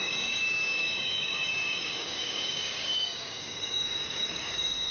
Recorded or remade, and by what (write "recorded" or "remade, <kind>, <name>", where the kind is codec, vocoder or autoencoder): remade, codec, DAC